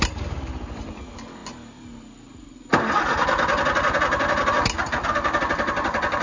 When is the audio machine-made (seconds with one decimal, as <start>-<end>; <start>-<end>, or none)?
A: 2.7-3.6